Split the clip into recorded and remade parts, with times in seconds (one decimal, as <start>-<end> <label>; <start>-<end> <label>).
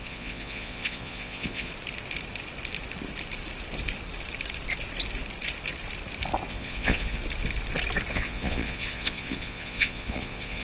0.0-1.7 remade; 1.7-6.5 recorded; 6.5-7.2 remade; 7.2-8.1 recorded; 8.1-10.6 remade